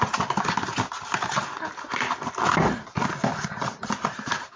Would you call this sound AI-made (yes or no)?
no